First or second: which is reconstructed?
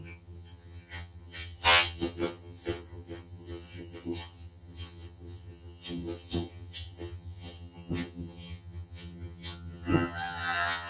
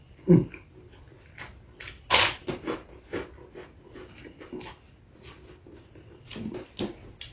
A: first